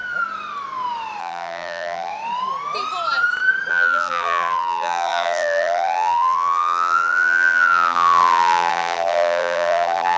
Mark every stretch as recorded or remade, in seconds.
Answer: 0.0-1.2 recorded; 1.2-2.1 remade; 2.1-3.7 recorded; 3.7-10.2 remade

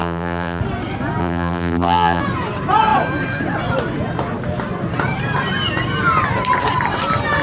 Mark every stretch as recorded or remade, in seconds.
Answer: 0.0-0.6 remade; 0.6-1.2 recorded; 1.2-2.2 remade; 2.2-7.4 recorded

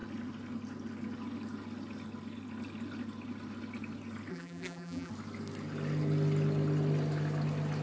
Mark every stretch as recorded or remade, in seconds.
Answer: 0.0-4.3 recorded; 4.3-5.1 remade; 5.1-7.8 recorded

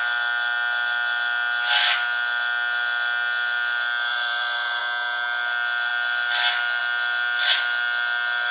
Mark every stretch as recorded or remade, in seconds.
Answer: 0.0-4.1 recorded; 4.1-4.8 remade; 4.8-8.5 recorded